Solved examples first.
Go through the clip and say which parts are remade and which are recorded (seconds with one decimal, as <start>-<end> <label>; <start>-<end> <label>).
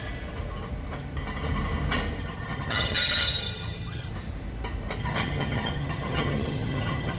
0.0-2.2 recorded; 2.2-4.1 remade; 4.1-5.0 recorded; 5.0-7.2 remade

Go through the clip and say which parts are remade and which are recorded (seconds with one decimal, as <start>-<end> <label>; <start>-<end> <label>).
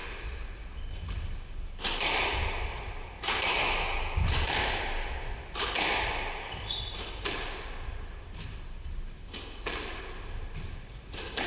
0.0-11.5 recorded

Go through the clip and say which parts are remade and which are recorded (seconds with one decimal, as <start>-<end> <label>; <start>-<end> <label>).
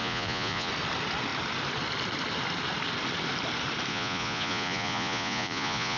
0.0-0.7 remade; 0.7-3.9 recorded; 3.9-6.0 remade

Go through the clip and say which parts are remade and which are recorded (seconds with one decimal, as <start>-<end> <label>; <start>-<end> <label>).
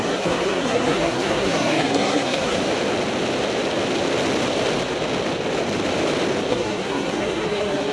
0.0-2.6 remade; 2.6-6.5 recorded; 6.5-7.9 remade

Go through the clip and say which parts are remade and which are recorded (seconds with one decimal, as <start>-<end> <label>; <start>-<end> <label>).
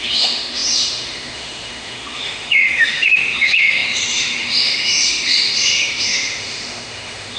0.0-7.4 remade